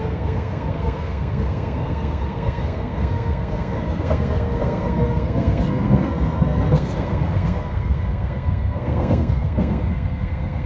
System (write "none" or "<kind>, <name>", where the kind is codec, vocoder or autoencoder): codec, SNAC